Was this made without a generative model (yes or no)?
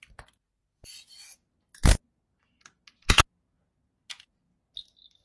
yes